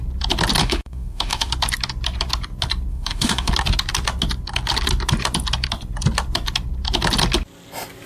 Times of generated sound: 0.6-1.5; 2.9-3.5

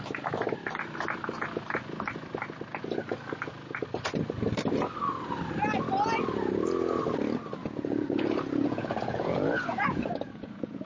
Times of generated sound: 7.6-10.8

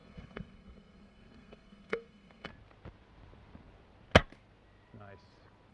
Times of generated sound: 0.0-2.5